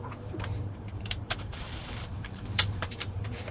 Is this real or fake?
fake